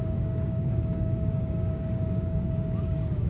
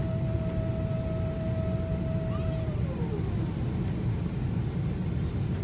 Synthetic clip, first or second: first